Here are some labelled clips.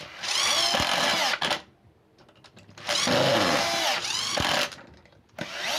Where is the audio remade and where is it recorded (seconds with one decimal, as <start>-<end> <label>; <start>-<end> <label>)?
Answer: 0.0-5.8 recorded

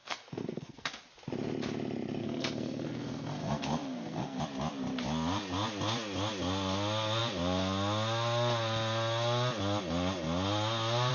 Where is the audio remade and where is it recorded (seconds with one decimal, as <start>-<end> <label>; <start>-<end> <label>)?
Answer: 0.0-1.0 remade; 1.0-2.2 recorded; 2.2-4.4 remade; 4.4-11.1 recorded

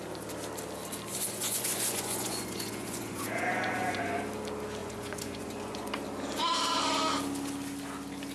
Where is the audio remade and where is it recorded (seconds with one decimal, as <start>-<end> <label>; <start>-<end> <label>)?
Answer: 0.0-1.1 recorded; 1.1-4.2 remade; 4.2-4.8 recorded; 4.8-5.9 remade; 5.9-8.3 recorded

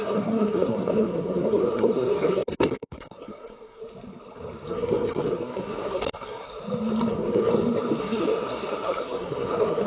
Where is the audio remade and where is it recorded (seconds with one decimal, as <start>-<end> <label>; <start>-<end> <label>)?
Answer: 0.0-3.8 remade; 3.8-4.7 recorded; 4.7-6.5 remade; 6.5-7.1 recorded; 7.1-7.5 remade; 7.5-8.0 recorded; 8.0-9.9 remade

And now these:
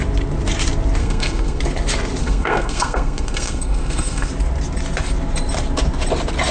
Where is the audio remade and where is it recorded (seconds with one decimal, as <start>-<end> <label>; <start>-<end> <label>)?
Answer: 0.0-1.0 recorded; 1.0-1.6 remade; 1.6-2.2 recorded; 2.2-4.3 remade; 4.3-6.5 recorded